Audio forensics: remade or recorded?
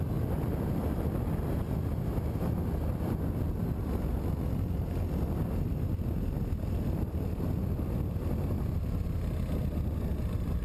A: recorded